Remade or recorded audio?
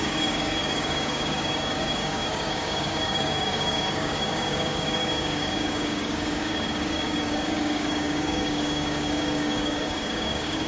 remade